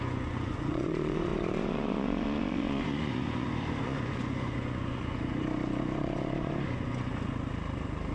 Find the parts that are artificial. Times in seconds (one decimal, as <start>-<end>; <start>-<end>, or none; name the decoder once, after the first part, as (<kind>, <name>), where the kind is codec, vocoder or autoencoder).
0.0-7.1 (vocoder, Vocos)